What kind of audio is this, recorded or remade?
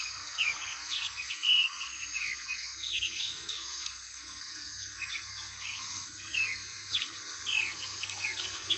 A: remade